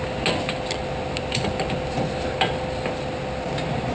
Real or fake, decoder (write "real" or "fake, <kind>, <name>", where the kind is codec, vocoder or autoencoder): real